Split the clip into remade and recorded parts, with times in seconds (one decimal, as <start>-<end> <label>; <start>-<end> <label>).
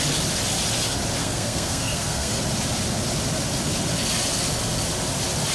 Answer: 0.0-1.2 recorded; 1.2-2.4 remade; 2.4-5.5 recorded